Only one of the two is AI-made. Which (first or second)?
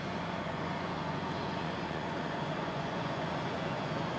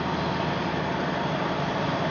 first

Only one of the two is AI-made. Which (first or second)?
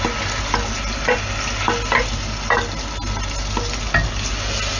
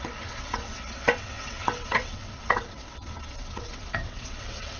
second